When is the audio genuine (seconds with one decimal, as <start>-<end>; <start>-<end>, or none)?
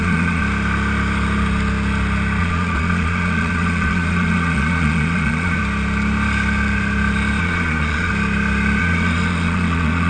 0.4-2.4; 5.6-7.4; 8.1-8.8